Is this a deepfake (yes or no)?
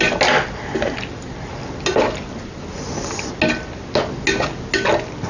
no